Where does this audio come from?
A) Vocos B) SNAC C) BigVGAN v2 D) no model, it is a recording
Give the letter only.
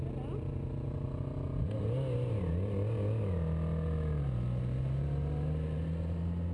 D